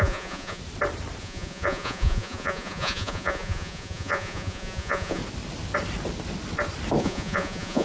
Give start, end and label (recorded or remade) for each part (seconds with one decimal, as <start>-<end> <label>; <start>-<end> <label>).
0.0-0.6 remade; 0.6-1.2 recorded; 1.2-5.2 remade; 5.2-7.0 recorded; 7.0-7.8 remade